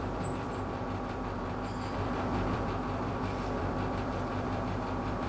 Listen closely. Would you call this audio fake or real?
fake